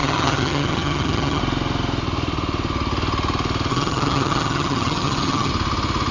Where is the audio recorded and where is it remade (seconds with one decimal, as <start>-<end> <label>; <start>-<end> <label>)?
0.0-1.4 remade; 1.4-3.7 recorded; 3.7-5.5 remade; 5.5-6.1 recorded

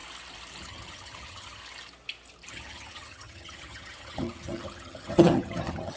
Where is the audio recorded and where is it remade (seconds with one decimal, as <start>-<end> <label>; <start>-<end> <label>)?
0.0-0.6 recorded; 0.6-1.6 remade; 1.6-2.5 recorded; 2.5-6.0 remade

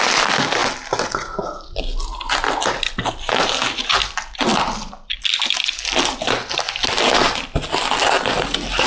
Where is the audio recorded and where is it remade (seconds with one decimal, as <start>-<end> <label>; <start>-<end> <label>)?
0.0-8.9 recorded

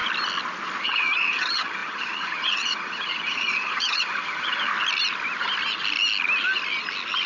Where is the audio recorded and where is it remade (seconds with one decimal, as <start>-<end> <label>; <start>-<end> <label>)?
0.0-0.8 recorded; 0.8-4.7 remade; 4.7-7.3 recorded